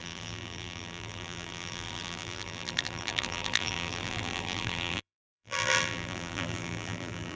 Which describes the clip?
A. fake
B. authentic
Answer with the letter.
A